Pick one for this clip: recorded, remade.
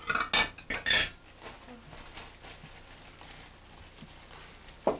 recorded